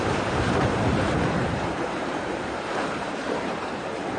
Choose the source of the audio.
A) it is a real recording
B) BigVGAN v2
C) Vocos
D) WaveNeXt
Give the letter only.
B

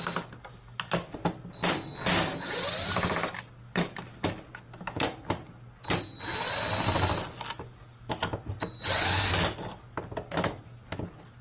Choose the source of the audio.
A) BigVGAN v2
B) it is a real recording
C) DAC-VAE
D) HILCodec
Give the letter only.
B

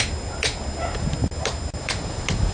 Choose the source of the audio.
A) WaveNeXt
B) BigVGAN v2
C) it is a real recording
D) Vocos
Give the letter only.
C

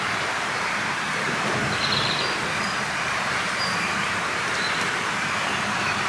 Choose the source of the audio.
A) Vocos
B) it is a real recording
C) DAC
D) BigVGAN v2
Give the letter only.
D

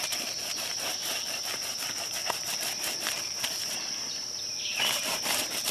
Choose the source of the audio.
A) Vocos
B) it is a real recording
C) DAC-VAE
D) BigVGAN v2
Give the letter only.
D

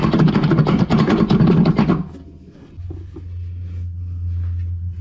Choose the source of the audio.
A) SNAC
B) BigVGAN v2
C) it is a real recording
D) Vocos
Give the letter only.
C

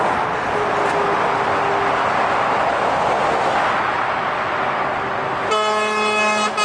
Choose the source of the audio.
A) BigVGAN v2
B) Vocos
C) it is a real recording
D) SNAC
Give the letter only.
C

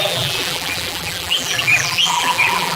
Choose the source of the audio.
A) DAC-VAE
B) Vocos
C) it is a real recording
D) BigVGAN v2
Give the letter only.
D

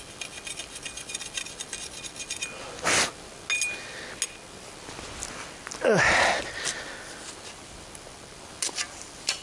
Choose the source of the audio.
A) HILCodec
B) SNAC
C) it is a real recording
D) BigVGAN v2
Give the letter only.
C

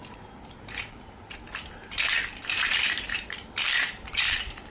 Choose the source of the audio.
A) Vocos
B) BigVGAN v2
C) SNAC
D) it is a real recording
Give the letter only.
B